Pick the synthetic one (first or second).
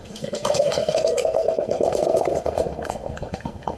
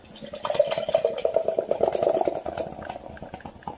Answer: first